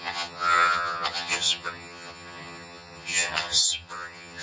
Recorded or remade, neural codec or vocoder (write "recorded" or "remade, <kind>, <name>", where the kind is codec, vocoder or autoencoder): remade, vocoder, HiFi-GAN